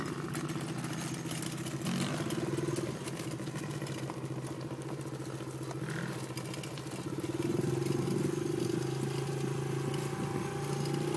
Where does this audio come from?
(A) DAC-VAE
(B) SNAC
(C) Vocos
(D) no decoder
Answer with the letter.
D